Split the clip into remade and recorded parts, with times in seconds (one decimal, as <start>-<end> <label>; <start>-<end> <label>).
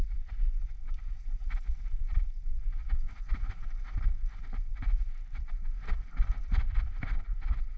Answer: 0.0-2.0 recorded; 2.0-2.5 remade; 2.5-4.8 recorded; 4.8-5.4 remade; 5.4-7.8 recorded